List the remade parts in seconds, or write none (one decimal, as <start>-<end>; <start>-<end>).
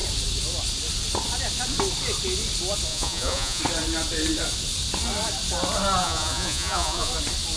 2.9-3.6; 6.0-7.1